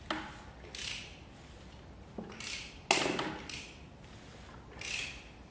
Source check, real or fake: real